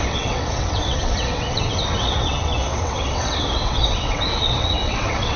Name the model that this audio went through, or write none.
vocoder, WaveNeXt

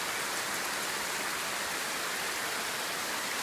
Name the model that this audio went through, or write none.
none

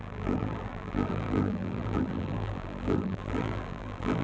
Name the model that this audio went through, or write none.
vocoder, BigVGAN v2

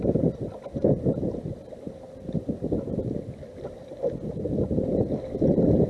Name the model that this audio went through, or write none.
none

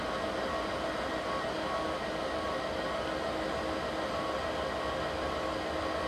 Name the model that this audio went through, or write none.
none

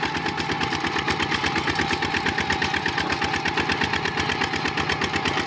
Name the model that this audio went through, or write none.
none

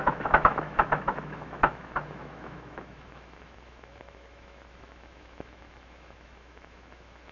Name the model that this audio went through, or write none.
autoencoder, DAC-VAE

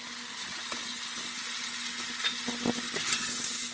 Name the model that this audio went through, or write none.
none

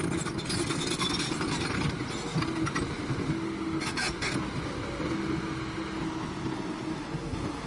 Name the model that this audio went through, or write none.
none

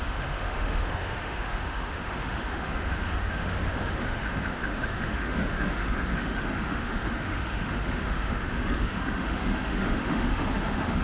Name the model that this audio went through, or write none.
autoencoder, DAC-VAE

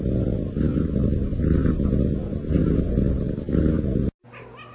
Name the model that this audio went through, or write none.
none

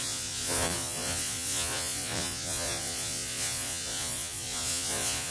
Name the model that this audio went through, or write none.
vocoder, Vocos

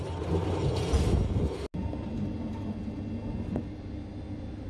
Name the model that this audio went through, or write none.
none